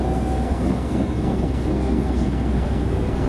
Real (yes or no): no